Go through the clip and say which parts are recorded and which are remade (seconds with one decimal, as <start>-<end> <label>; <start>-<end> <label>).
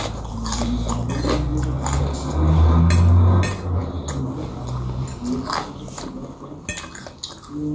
0.0-7.7 recorded